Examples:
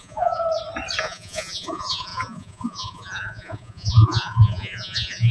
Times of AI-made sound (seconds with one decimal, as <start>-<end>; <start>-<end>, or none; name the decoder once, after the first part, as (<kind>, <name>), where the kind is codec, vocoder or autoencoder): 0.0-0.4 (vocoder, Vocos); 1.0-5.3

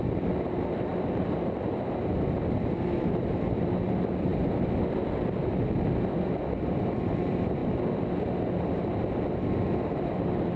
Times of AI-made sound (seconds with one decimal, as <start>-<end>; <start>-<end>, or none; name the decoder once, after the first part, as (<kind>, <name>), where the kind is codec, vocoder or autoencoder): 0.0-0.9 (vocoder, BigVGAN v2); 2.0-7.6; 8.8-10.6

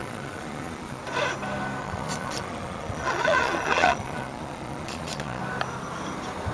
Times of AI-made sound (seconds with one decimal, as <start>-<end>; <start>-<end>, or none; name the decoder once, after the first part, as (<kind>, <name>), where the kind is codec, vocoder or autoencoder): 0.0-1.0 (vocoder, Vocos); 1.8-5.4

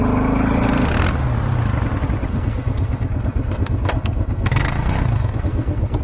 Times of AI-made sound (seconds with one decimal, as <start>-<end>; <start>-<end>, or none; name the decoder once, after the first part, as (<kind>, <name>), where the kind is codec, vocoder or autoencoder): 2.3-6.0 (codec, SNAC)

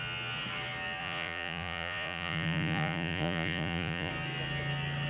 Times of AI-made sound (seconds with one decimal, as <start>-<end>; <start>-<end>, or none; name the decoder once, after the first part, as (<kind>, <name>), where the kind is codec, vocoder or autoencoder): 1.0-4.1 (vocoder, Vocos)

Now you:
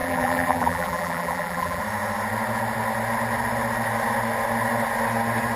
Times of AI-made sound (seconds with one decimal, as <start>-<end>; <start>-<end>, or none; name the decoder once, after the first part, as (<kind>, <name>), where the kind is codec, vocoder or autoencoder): 0.0-1.8 (vocoder, BigVGAN v2)

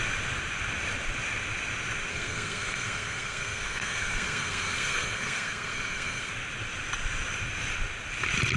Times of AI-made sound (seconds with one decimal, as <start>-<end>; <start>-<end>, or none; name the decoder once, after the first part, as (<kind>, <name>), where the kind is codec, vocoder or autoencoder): 2.1-6.3 (codec, SNAC)